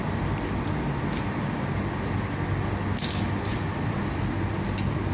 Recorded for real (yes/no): yes